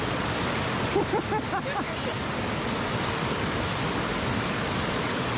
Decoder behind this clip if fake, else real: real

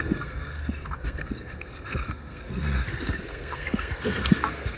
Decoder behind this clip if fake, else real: fake, codec, SNAC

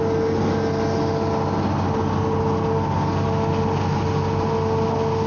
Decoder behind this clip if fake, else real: real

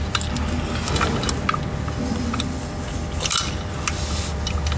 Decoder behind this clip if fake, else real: real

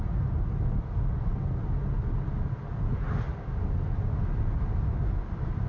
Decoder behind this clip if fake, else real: real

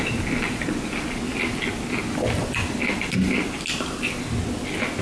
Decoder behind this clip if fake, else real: real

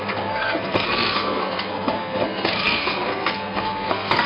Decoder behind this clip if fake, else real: fake, codec, SNAC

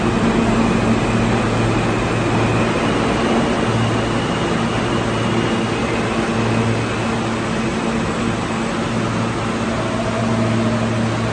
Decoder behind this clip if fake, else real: real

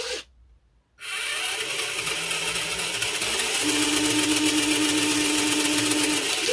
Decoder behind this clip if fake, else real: real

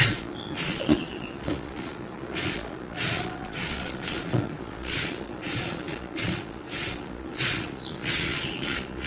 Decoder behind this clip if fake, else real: fake, vocoder, Vocos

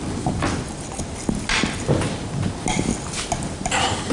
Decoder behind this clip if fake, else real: real